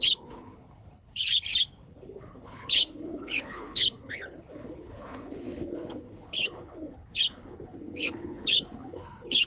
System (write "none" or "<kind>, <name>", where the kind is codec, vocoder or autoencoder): codec, HILCodec